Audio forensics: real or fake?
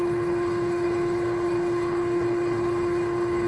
fake